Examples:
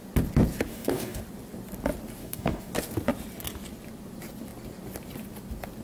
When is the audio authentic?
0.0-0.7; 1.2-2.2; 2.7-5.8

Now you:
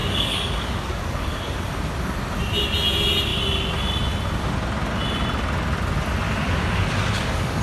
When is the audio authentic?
1.4-6.6

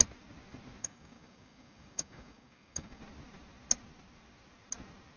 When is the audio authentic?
0.0-0.8; 3.0-5.2

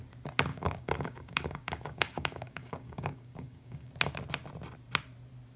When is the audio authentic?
0.0-0.5; 3.9-5.6

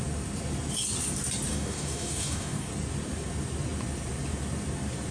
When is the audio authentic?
0.0-1.5; 2.7-5.1

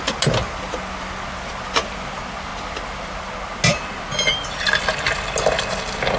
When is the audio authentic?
0.0-6.2

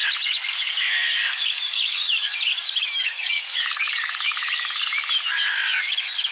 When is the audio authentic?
none

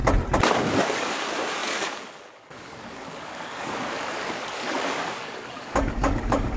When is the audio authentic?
0.0-0.6